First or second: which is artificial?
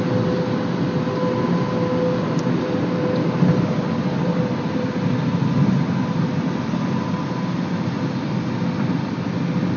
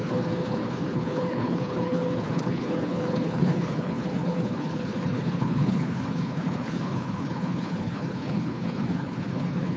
second